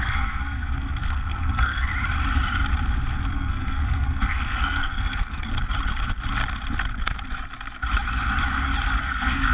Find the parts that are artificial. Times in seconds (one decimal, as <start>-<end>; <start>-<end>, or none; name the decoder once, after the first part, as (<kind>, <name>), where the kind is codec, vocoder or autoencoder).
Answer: 0.0-1.9 (codec, SNAC); 3.3-5.5; 9.0-9.5